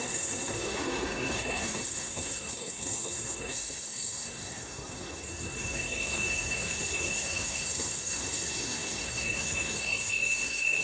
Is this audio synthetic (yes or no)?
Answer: yes